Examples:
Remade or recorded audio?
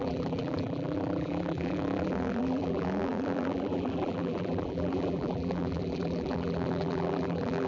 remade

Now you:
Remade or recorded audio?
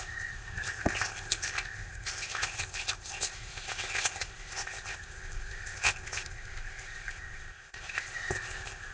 remade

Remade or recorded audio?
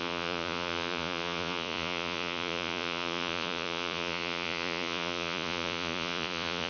remade